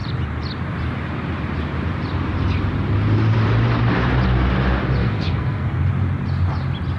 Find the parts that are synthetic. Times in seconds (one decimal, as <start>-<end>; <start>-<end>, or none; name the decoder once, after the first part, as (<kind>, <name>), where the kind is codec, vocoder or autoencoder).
5.0-5.8 (codec, SNAC)